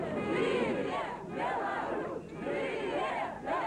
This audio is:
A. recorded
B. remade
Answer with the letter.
A